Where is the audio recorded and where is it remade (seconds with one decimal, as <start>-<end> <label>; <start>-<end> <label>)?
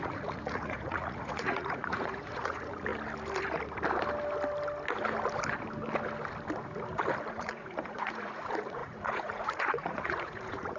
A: 0.0-2.9 remade; 2.9-7.3 recorded; 7.3-10.8 remade